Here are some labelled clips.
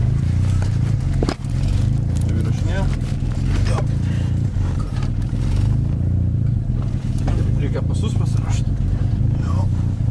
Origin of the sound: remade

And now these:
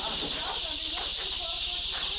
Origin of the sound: remade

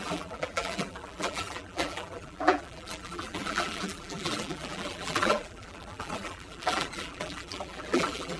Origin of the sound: remade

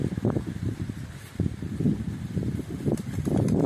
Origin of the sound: remade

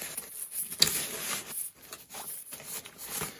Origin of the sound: recorded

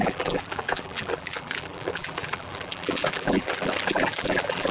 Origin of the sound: remade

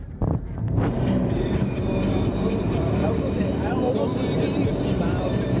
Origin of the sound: remade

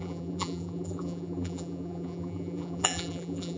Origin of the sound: remade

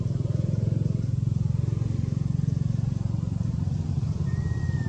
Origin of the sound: recorded